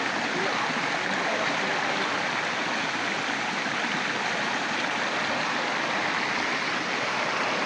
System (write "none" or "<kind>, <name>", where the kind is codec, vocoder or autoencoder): none